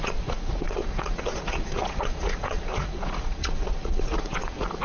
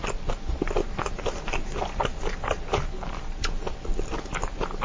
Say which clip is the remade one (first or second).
first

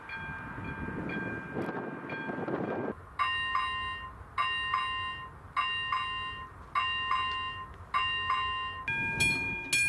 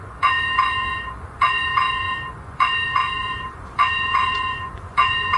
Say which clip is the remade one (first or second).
second